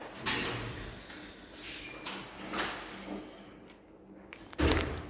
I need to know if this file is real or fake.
real